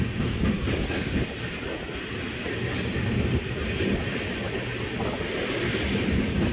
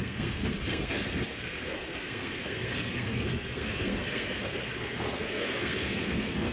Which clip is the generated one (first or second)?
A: second